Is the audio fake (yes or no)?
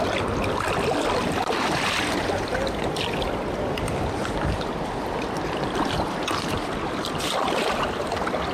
no